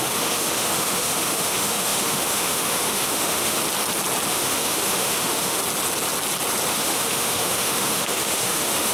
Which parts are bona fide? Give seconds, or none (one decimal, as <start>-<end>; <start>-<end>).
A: 3.6-4.3; 5.6-6.7